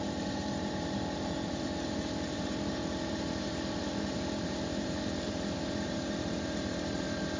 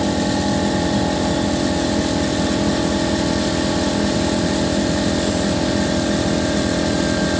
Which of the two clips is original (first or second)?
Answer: second